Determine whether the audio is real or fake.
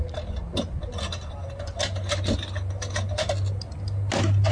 real